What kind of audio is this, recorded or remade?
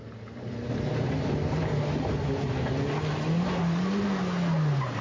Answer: recorded